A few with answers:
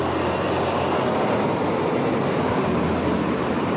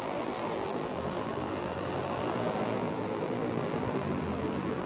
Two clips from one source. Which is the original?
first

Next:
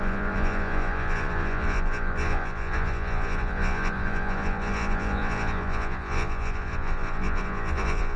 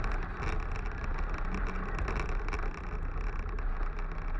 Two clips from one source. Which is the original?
second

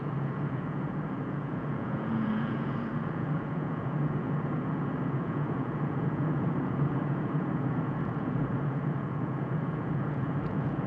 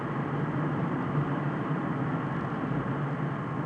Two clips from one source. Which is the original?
second